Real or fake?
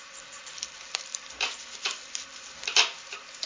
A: fake